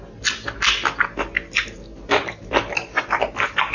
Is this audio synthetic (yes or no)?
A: no